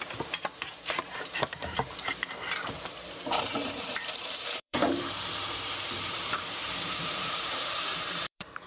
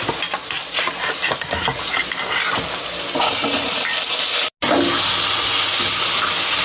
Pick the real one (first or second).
second